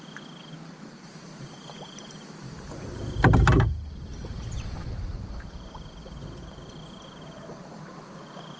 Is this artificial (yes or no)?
no